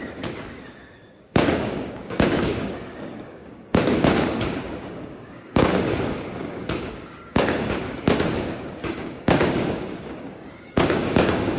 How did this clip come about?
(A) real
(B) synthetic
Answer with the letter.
B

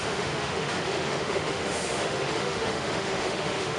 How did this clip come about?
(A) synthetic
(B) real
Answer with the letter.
A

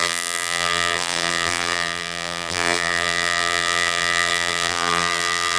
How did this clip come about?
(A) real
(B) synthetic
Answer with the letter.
B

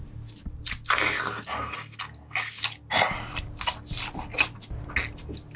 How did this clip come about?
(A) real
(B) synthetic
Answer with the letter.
A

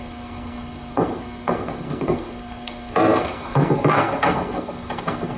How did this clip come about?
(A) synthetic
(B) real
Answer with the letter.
A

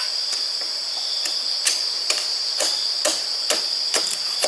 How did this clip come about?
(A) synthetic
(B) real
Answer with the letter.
B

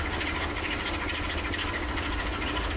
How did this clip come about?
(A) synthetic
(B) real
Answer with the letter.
B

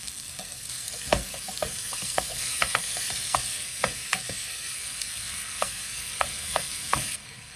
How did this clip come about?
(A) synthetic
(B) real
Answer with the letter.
A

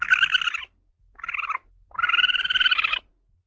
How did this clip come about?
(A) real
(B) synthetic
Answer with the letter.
A